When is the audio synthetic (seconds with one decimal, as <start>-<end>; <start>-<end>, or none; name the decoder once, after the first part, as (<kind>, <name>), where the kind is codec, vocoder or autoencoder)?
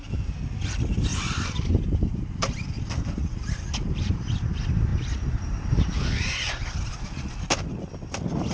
none